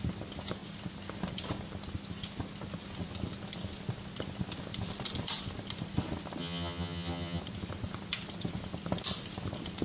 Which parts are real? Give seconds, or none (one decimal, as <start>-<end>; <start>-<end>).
0.0-6.4; 7.4-9.8